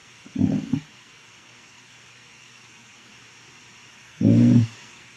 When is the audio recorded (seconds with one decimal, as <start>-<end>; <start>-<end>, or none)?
3.1-3.9